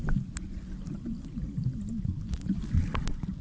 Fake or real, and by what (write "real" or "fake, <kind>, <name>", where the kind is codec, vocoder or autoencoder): real